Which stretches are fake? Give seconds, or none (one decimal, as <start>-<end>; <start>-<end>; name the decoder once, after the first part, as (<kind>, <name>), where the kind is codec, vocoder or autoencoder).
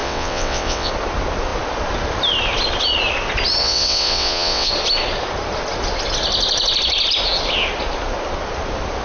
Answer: 0.0-0.9 (vocoder, WaveNeXt); 3.6-4.7